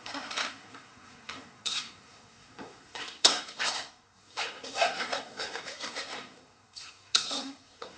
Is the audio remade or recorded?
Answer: remade